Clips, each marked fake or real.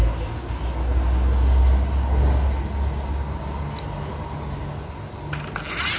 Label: real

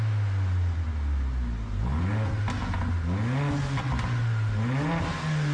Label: real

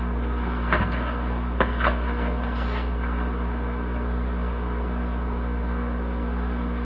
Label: fake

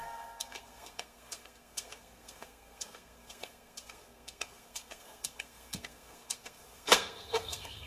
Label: fake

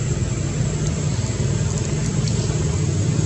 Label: real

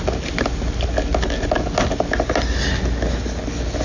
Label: real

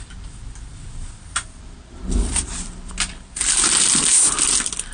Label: real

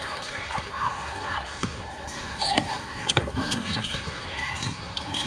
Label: fake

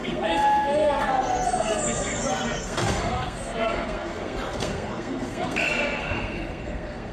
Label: fake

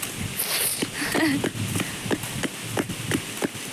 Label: real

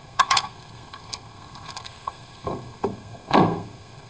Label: fake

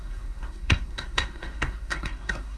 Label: fake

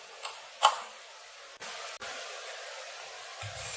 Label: real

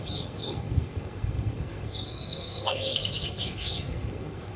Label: fake